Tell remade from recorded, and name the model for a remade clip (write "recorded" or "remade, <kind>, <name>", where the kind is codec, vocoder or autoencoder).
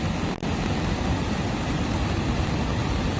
recorded